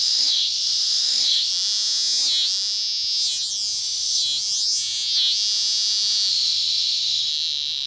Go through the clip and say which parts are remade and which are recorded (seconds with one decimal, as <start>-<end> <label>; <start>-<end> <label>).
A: 0.0-1.5 remade; 1.5-3.8 recorded; 3.8-4.2 remade; 4.2-6.3 recorded; 6.3-7.3 remade; 7.3-7.9 recorded